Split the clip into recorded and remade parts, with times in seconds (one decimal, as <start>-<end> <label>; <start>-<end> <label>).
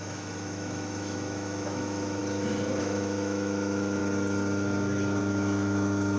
0.0-2.2 remade; 2.2-2.8 recorded; 2.8-4.0 remade; 4.0-5.2 recorded; 5.2-6.2 remade